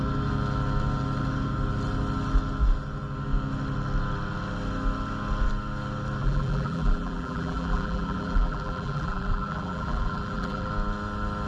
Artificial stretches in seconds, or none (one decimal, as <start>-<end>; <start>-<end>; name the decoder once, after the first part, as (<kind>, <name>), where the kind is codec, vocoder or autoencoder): 6.2-10.7 (vocoder, BigVGAN v2)